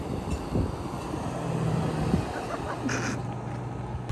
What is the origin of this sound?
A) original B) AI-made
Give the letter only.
A